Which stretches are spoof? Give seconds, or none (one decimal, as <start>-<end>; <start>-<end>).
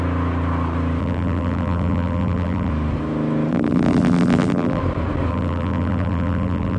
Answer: 1.0-2.7; 3.5-4.8; 5.3-6.8